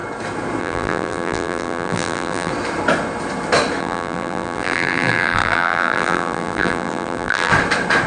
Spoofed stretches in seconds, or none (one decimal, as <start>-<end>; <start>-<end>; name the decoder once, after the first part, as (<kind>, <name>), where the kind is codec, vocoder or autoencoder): 0.6-2.5 (vocoder, BigVGAN v2); 3.8-7.5

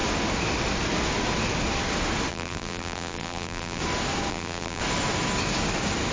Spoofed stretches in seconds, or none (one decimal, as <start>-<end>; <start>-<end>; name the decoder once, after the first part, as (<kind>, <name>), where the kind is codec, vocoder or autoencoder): 2.3-3.8 (vocoder, BigVGAN v2); 4.3-4.8

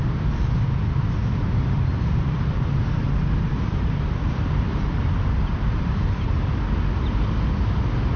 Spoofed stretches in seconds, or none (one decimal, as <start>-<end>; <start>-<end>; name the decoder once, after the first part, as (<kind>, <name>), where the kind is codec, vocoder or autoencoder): 1.2-5.1 (vocoder, BigVGAN v2); 5.5-6.6